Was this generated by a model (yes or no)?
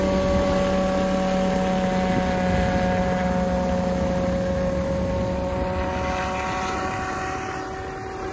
no